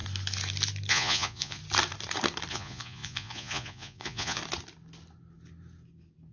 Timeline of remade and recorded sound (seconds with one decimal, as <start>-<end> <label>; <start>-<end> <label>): 0.0-0.9 recorded; 0.9-1.6 remade; 1.6-2.5 recorded; 2.5-4.4 remade; 4.4-6.3 recorded